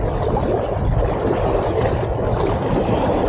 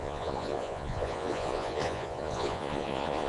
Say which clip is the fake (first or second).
second